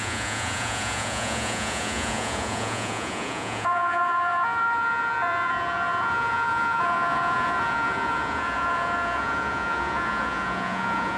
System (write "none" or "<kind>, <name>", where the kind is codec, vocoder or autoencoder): vocoder, Vocos